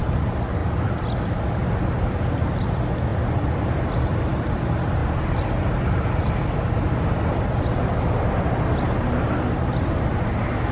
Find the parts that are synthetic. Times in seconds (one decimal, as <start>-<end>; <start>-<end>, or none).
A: 3.1-4.2